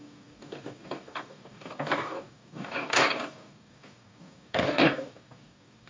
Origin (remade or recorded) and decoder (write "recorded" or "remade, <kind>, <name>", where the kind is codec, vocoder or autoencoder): remade, codec, DAC